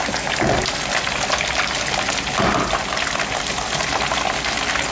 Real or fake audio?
real